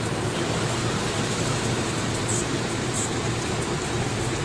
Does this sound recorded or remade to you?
remade